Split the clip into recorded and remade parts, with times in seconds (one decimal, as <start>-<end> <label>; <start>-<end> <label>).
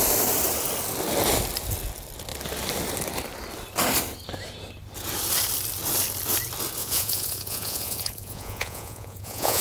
0.0-6.8 recorded; 6.8-9.6 remade